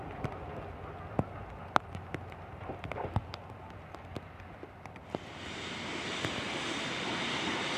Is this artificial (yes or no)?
no